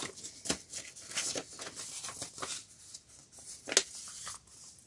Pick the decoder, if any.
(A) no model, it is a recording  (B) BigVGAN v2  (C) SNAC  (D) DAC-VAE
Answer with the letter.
A